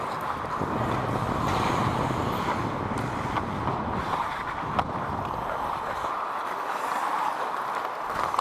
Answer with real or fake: real